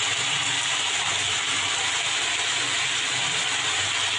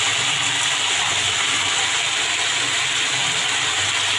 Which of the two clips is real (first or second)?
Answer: first